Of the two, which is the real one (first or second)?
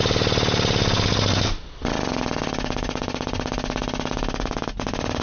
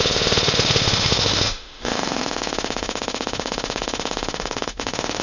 first